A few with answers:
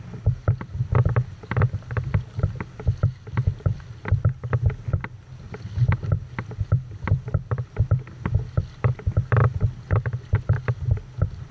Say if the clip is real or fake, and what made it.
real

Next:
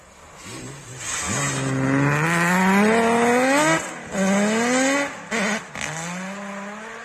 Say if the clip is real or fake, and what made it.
real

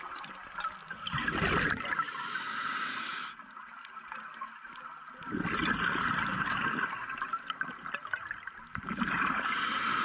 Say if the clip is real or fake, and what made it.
real